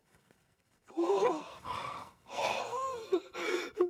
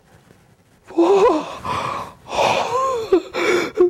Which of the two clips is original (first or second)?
second